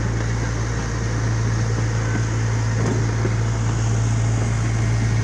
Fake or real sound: real